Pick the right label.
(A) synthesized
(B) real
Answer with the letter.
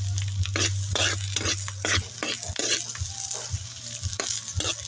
B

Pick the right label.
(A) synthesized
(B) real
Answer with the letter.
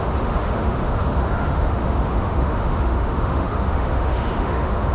A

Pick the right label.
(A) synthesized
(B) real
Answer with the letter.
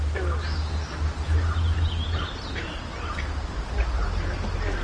B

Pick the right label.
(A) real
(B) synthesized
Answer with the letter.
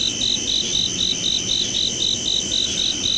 A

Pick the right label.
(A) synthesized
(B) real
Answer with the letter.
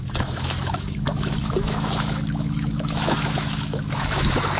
A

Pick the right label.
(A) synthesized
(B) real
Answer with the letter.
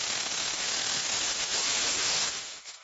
A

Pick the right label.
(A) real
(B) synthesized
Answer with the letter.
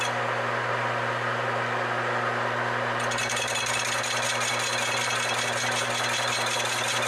A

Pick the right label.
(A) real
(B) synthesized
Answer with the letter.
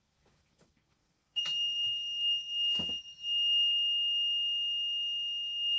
B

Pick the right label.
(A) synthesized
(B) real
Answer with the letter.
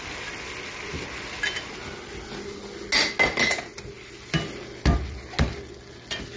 B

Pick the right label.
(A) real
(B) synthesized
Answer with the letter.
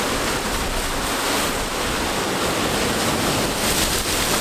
A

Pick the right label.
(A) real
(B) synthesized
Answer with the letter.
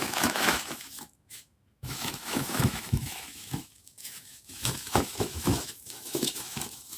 B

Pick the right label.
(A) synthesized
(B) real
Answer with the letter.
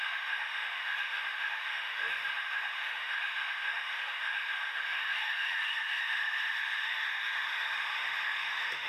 A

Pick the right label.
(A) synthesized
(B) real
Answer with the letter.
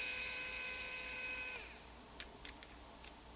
B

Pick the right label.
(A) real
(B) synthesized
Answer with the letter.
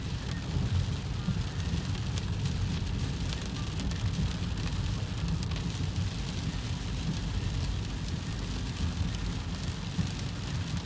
A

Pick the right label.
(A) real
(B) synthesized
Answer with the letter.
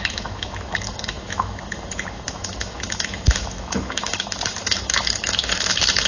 B